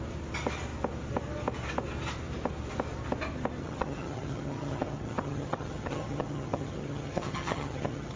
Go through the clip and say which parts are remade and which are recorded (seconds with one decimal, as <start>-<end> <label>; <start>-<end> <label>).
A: 0.0-3.6 recorded; 3.6-8.2 remade